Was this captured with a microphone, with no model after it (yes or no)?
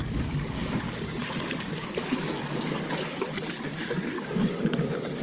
no